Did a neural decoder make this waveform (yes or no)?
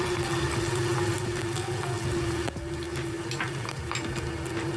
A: no